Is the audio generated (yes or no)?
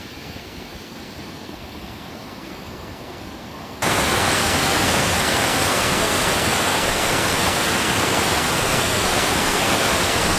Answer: yes